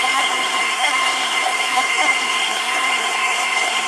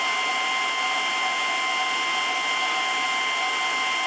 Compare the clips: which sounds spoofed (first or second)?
first